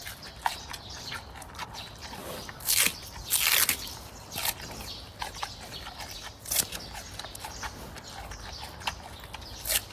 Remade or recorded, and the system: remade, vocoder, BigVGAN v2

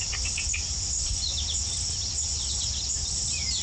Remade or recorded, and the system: recorded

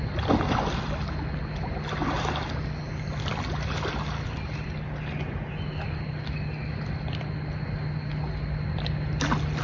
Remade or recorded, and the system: recorded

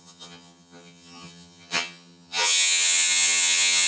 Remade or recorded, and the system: remade, vocoder, HiFi-GAN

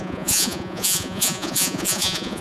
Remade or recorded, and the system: remade, vocoder, Vocos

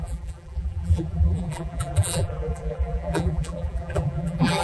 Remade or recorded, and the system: remade, vocoder, BigVGAN v2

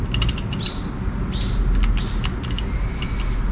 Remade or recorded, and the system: recorded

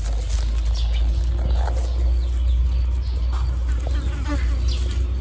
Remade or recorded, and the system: recorded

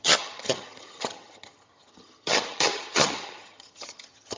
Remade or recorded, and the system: remade, vocoder, HiFi-GAN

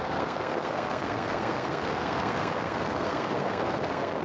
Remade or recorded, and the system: remade, codec, SNAC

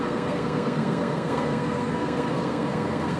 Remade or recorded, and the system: remade, codec, SNAC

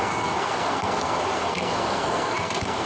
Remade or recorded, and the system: remade, codec, SNAC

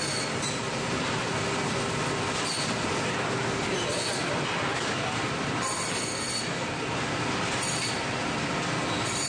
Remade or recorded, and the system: recorded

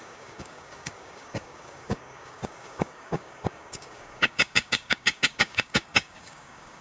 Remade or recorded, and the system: remade, codec, DAC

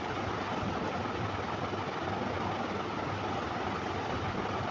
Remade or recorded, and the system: recorded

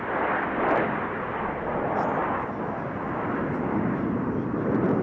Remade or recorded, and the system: recorded